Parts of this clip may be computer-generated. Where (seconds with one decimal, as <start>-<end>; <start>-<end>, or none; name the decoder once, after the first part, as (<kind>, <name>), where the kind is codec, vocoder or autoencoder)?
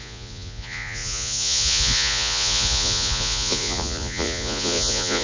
0.0-5.2 (vocoder, Vocos)